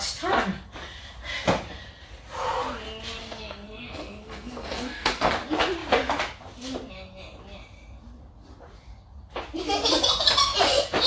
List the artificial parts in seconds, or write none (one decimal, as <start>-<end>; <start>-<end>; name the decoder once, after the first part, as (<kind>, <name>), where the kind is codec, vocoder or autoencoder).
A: 3.2-5.3 (codec, SNAC)